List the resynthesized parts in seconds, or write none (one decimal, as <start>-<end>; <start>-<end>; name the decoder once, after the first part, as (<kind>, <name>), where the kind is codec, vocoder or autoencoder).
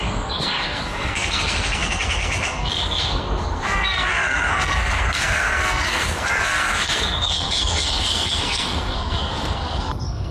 0.0-10.3 (codec, SNAC)